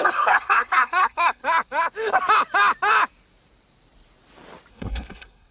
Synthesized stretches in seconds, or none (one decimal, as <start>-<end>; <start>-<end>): 0.0-1.4; 4.7-5.5